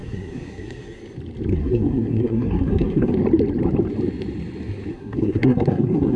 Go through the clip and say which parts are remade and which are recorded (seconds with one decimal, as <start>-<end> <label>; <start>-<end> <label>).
0.0-1.0 remade; 1.0-1.5 recorded; 1.5-3.1 remade; 3.1-4.9 recorded; 4.9-6.2 remade